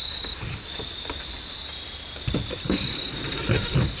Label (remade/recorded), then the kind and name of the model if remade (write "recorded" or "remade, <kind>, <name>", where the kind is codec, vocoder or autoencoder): remade, vocoder, BigVGAN v2